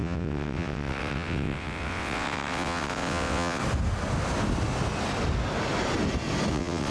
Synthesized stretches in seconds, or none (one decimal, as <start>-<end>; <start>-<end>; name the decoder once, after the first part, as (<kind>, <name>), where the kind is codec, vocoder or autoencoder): 0.0-3.6 (vocoder, WaveNeXt); 6.5-6.9